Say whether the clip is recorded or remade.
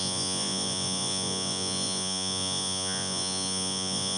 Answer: remade